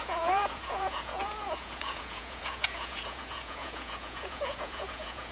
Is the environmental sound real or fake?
fake